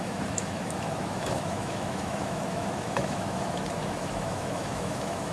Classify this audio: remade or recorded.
remade